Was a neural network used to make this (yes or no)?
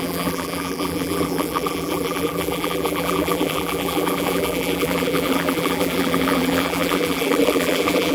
yes